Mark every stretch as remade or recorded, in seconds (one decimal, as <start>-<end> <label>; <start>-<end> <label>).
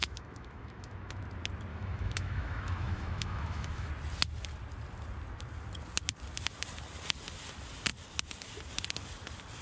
0.0-1.2 remade; 1.2-1.7 recorded; 1.7-3.9 remade; 3.9-9.6 recorded